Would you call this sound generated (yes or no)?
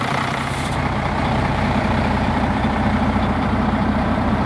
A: yes